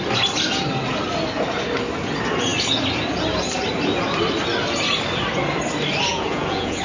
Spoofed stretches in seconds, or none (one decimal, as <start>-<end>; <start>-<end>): 6.1-6.8